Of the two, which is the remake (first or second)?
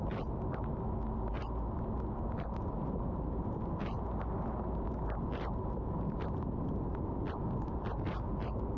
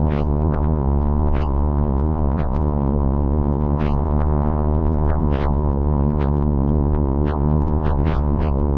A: second